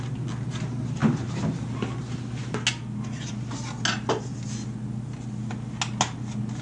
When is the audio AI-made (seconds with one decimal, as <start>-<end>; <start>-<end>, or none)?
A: none